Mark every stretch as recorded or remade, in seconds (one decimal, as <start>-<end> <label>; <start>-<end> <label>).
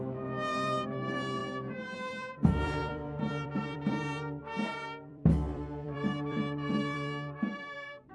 0.0-8.1 remade